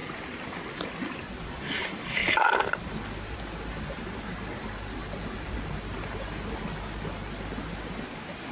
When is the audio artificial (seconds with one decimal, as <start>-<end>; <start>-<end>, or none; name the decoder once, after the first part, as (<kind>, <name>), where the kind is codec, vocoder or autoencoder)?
0.0-0.5 (vocoder, BigVGAN v2); 2.2-2.9; 5.0-7.6